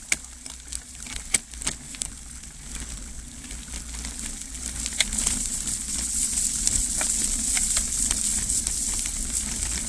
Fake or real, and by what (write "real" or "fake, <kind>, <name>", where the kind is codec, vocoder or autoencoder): real